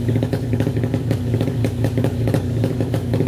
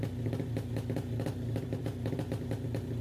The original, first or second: second